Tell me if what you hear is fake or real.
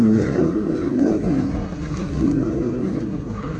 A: fake